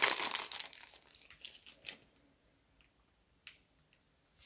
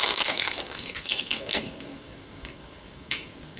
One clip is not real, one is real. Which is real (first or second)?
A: first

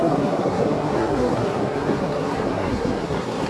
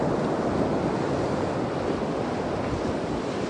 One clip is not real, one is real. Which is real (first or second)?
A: second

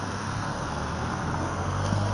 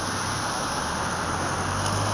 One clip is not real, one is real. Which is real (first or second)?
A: second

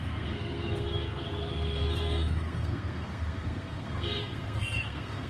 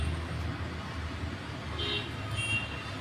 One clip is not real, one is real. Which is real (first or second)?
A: second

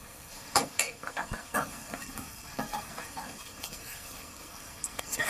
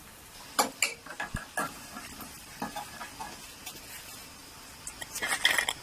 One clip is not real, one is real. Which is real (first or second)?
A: second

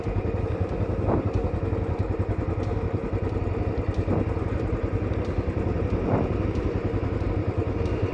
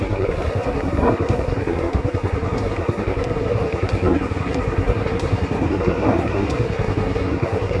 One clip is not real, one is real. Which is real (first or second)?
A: first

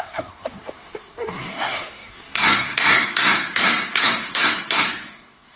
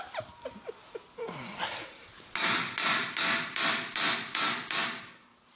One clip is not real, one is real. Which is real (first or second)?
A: second